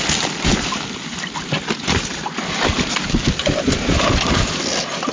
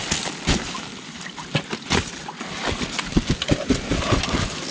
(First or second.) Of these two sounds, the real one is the second